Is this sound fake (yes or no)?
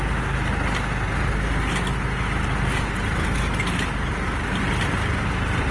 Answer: no